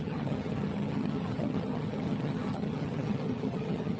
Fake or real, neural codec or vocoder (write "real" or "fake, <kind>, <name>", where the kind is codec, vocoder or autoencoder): fake, vocoder, HiFi-GAN